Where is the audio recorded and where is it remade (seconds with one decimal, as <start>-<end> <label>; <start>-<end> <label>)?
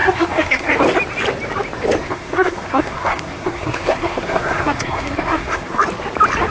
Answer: 0.0-0.7 remade; 0.7-2.0 recorded; 2.0-5.8 remade; 5.8-6.5 recorded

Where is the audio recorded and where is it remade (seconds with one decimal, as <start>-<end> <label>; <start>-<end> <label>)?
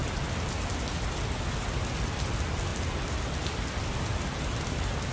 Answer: 0.0-0.8 remade; 0.8-5.1 recorded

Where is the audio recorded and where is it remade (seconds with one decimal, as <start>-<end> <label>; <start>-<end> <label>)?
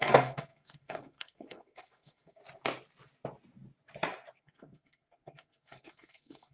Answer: 0.0-2.4 remade; 2.4-4.4 recorded; 4.4-6.5 remade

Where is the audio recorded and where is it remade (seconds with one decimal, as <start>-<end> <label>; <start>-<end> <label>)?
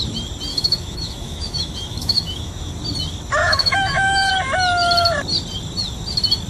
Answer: 0.0-0.5 recorded; 0.5-2.7 remade; 2.7-3.4 recorded; 3.4-4.3 remade; 4.3-6.5 recorded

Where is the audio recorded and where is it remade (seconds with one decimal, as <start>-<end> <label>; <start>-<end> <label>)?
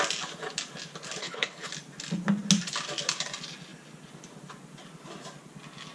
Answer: 0.0-1.2 recorded; 1.2-1.7 remade; 1.7-5.9 recorded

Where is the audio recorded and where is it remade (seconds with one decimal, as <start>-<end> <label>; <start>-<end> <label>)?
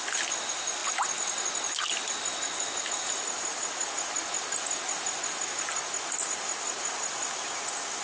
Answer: 0.0-8.0 recorded